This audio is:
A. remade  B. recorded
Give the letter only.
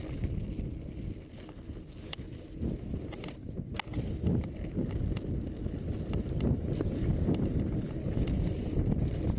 B